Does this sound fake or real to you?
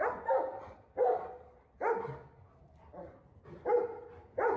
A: real